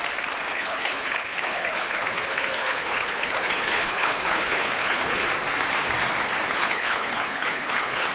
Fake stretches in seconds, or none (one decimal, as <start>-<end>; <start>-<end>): 0.5-5.3; 6.6-8.1